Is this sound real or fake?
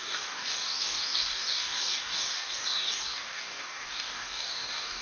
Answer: fake